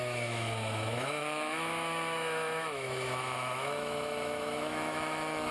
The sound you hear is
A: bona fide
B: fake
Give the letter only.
B